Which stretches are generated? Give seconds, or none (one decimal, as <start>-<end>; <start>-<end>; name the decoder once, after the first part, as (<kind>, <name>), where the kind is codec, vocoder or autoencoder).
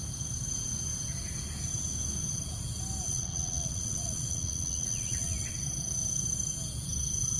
3.1-5.6 (vocoder, WaveNeXt)